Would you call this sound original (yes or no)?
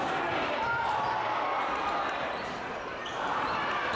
no